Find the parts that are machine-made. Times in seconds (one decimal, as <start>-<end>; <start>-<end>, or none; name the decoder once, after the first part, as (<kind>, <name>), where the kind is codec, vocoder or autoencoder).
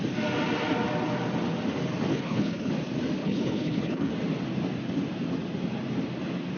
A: 2.1-2.7 (codec, HILCodec); 3.2-4.1